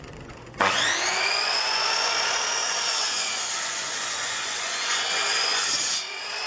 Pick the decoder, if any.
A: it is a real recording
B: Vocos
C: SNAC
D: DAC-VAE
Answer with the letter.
B